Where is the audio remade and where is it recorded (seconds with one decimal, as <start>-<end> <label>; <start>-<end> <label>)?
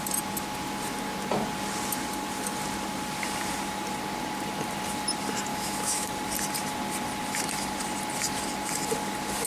0.0-5.5 recorded; 5.5-6.1 remade; 6.1-9.5 recorded